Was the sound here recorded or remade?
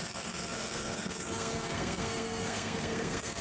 remade